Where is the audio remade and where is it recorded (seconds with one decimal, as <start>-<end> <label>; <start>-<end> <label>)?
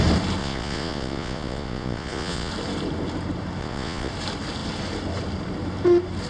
0.0-0.4 recorded; 0.4-2.5 remade; 2.5-3.6 recorded; 3.6-4.1 remade; 4.1-6.3 recorded